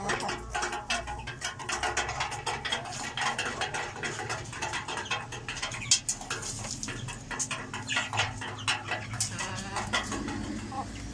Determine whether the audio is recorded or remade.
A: recorded